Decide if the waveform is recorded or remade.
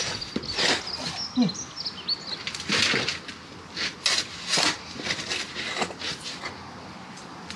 recorded